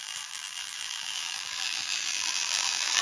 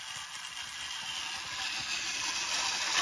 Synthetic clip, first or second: first